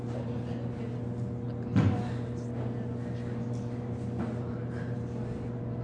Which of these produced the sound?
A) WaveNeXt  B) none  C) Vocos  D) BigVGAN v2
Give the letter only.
B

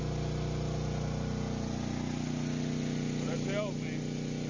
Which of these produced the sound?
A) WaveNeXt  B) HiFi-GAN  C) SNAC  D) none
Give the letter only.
D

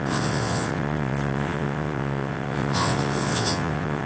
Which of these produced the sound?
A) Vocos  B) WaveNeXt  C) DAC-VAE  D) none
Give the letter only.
B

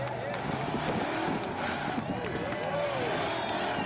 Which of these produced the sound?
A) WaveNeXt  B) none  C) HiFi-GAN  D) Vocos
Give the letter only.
B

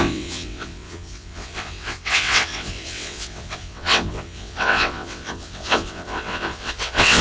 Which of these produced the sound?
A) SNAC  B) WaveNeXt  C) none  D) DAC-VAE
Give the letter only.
B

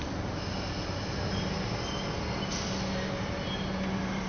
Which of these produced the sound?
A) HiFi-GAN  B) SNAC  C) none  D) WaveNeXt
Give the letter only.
C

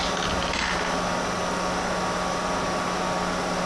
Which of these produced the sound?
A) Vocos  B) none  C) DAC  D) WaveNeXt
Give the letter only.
B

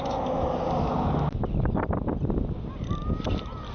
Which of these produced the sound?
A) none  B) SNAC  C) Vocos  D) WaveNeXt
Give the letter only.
A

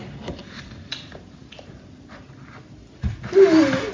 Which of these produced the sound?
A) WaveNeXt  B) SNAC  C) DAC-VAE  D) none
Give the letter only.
D